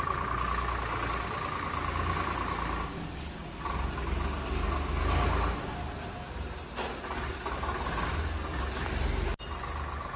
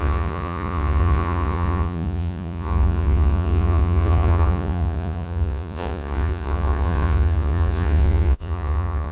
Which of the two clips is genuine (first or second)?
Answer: first